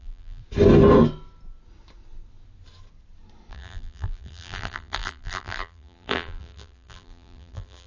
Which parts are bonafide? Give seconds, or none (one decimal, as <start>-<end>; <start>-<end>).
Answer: 0.4-3.5

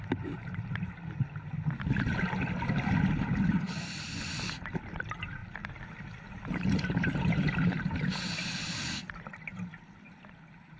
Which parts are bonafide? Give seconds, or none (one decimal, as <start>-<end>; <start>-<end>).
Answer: 0.0-5.4; 9.0-10.8

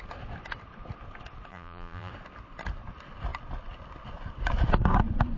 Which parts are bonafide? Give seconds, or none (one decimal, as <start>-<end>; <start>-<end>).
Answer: 0.0-1.5; 2.1-5.4

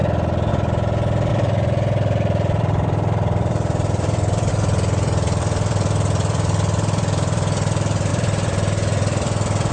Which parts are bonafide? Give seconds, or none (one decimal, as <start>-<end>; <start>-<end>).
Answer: 0.0-0.5

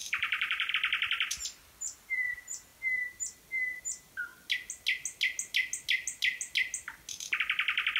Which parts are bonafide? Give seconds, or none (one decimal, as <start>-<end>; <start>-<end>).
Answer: 0.7-8.0

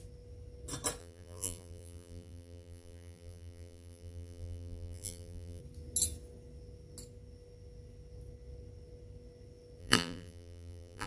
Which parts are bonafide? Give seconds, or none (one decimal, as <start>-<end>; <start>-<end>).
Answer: 0.0-1.0; 5.6-9.8

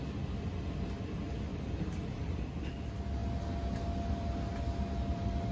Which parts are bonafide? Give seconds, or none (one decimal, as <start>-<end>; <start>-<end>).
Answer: 0.0-1.5; 2.4-5.5